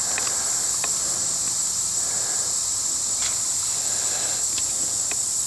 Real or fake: real